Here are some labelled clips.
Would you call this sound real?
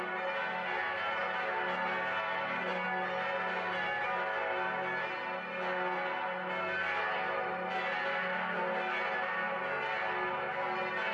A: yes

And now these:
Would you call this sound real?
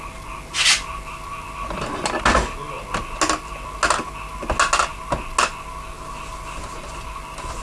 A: yes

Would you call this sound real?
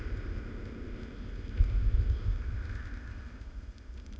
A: no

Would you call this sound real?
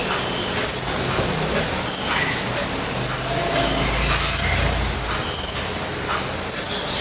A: yes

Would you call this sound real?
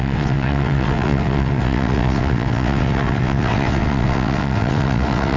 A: no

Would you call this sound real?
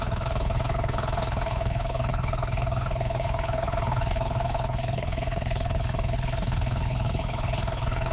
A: no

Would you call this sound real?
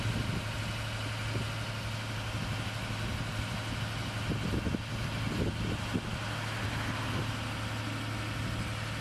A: yes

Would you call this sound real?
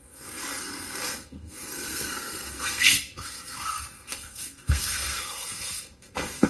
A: no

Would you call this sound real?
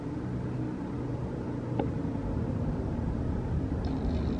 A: yes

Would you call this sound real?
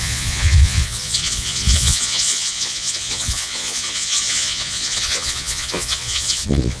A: no